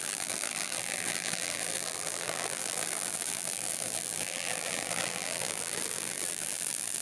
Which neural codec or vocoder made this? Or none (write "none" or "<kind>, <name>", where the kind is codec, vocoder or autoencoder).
vocoder, BigVGAN v2